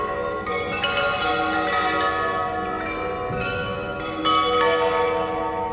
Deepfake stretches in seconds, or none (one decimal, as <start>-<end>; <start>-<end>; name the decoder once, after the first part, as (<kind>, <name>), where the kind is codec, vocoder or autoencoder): none